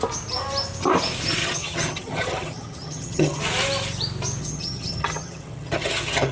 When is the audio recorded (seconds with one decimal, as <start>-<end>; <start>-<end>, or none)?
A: 0.0-1.4; 3.4-4.4

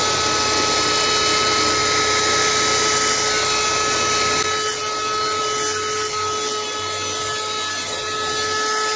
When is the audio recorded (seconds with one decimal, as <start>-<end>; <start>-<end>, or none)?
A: 0.0-9.0

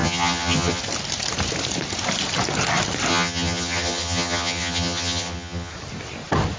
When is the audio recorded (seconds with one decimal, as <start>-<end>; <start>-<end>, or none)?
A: 0.8-3.1; 5.7-6.6

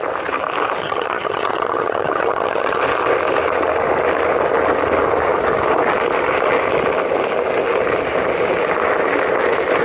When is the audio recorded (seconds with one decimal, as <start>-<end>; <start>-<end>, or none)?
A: 0.0-0.8; 2.8-9.8